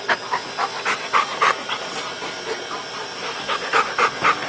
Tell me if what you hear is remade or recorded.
recorded